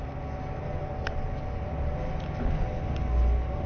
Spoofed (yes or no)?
no